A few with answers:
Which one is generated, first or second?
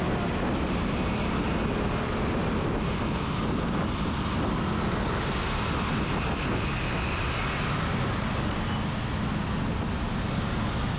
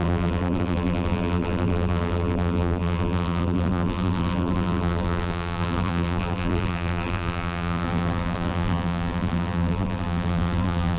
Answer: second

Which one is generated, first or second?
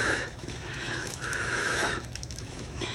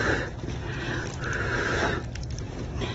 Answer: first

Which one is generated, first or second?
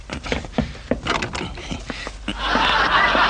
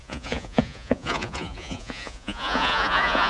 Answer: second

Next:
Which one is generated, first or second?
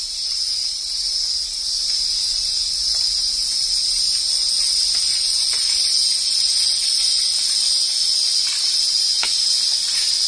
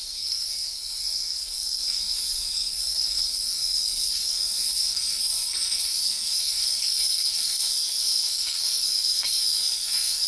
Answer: second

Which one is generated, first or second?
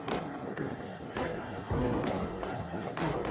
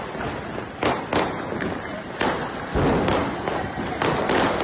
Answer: first